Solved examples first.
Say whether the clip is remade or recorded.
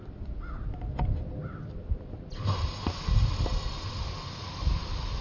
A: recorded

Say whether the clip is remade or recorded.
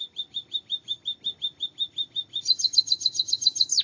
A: recorded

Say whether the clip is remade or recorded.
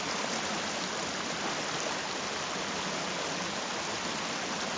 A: recorded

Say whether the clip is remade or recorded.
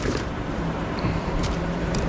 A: remade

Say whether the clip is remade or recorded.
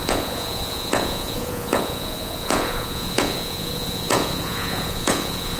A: remade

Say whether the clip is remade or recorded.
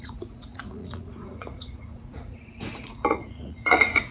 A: remade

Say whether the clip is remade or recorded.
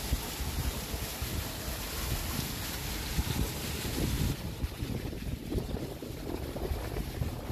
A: recorded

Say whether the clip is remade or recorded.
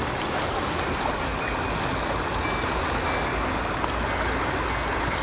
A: recorded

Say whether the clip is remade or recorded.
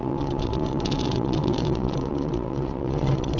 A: remade